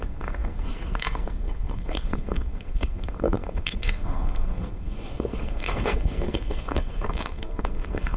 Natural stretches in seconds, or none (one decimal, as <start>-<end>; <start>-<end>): none